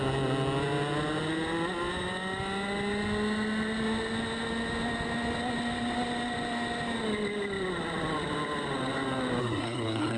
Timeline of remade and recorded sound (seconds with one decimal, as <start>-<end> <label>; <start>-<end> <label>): 0.0-9.4 recorded; 9.4-10.2 remade